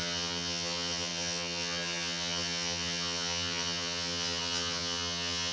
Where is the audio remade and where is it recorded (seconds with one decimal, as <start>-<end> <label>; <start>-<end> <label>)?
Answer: 0.0-5.5 remade